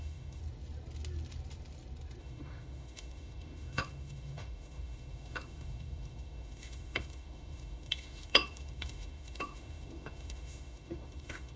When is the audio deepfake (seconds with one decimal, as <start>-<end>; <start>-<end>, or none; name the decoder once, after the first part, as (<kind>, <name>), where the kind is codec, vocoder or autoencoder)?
0.0-0.4 (autoencoder, DAC-VAE); 2.2-11.6